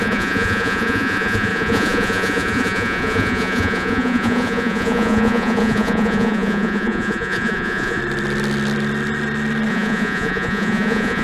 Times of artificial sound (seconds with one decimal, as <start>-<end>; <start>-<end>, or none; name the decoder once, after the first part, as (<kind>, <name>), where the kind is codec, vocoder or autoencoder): 0.0-8.0 (vocoder, Vocos); 9.7-11.2